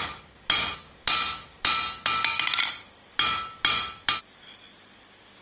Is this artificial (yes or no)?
no